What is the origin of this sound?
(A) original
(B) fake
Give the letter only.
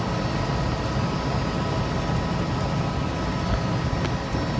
A